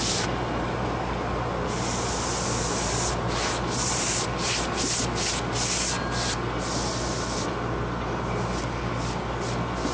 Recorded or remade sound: recorded